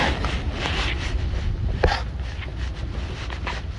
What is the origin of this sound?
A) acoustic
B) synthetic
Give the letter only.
A